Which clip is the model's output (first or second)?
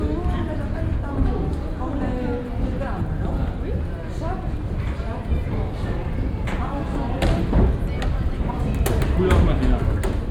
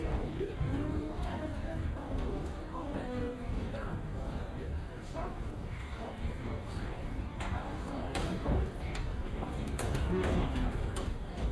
second